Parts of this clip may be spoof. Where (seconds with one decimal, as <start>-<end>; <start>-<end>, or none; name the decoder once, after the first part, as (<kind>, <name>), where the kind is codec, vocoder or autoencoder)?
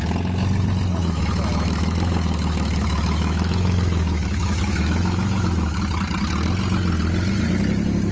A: 1.0-5.8 (autoencoder, DAC-VAE)